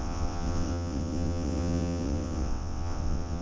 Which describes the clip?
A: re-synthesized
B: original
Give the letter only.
A